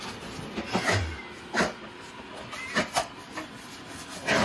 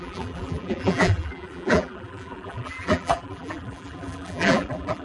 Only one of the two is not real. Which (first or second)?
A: second